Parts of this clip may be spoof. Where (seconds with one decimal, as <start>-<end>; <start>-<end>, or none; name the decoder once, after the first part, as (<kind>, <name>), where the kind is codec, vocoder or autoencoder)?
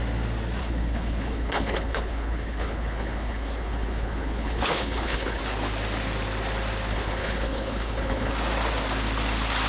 0.6-5.4 (codec, HILCodec); 6.9-8.3